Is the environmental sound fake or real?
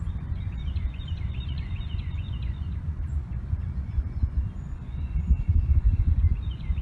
fake